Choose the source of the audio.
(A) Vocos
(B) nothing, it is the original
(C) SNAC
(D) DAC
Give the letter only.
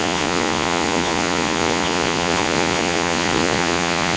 A